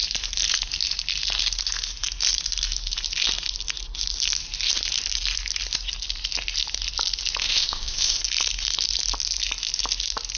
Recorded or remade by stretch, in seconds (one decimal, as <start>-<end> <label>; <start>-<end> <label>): 0.0-7.4 recorded; 7.4-8.2 remade; 8.2-10.4 recorded